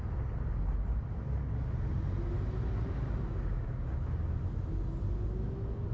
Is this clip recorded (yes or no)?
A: yes